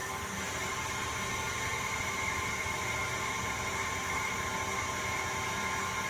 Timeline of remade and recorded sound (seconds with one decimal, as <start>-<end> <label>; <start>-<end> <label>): 0.0-1.1 remade; 1.1-1.7 recorded; 1.7-4.5 remade; 4.5-6.1 recorded